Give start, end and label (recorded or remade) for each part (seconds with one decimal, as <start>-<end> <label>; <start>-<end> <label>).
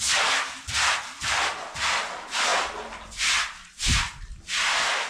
0.0-5.1 recorded